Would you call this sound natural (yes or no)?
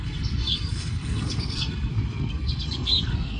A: no